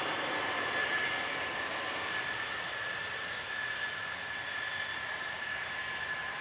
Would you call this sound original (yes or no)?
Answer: yes